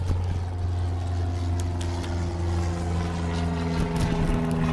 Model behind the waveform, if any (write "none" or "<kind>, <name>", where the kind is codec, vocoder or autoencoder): none